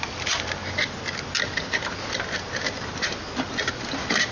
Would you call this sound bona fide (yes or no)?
yes